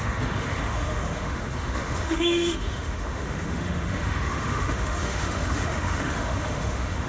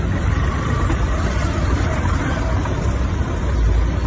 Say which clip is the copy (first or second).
first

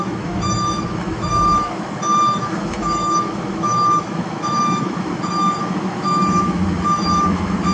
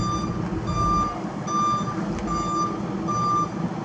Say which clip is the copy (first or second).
first